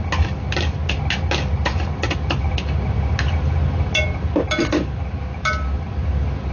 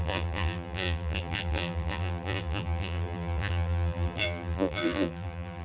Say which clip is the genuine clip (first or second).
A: first